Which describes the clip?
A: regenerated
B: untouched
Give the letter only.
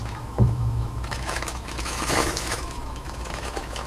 A